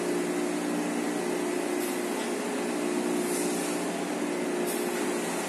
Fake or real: real